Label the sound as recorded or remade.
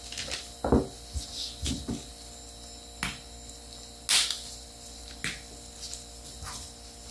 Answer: recorded